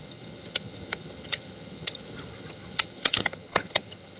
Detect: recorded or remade remade